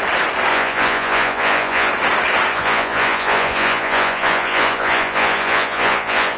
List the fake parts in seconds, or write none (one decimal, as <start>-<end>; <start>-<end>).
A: 0.5-1.9; 2.5-6.4